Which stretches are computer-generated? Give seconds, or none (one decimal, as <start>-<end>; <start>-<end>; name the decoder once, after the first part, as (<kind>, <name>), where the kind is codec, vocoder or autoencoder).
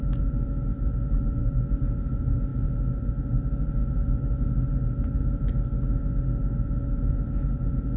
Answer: none